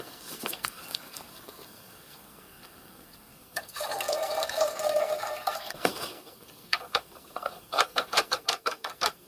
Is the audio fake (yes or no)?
yes